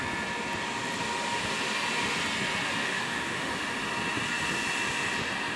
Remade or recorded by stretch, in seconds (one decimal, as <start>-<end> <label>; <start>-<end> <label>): 0.0-2.8 recorded; 2.8-3.5 remade; 3.5-5.6 recorded